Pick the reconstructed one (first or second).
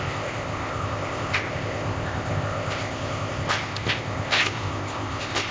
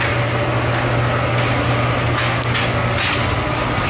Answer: first